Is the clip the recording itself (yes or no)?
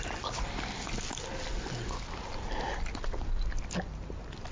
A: yes